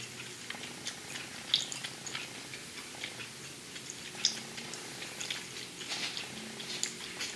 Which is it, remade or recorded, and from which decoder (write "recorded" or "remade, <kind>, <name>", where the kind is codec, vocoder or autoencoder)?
recorded